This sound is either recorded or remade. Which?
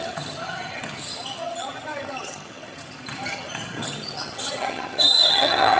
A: remade